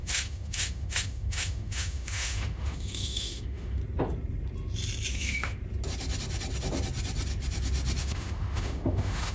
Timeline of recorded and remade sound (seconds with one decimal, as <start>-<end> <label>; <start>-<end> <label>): 0.0-3.8 remade; 3.8-5.1 recorded; 5.1-5.6 remade; 5.6-8.0 recorded; 8.0-9.3 remade